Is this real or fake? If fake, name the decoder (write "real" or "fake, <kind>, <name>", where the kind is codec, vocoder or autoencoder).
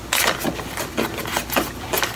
real